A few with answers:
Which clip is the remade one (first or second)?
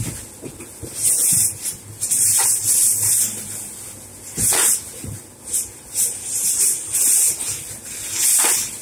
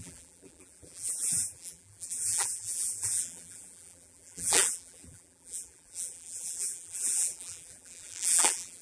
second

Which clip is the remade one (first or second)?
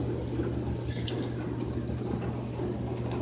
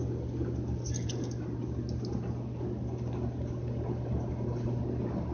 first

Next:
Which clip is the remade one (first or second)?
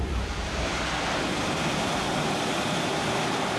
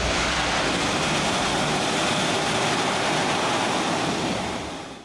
first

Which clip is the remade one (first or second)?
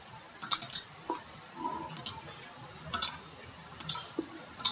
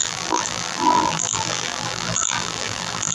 second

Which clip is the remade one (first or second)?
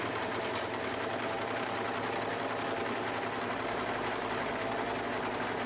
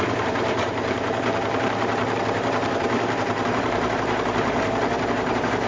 second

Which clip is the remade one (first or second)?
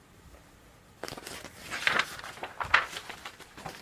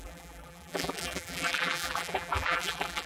second